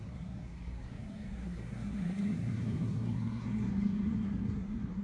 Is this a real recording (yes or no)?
no